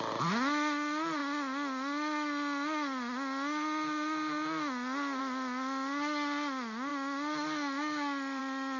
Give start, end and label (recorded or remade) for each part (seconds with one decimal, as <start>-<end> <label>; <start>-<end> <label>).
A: 0.0-8.8 recorded